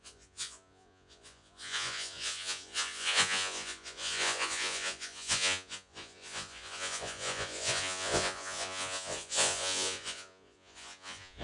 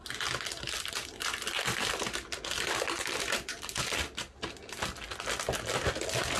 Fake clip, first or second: first